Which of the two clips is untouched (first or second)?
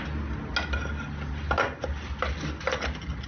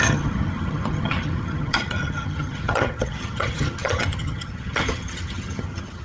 first